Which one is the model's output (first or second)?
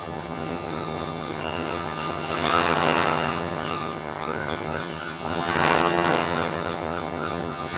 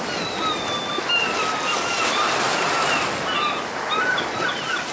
first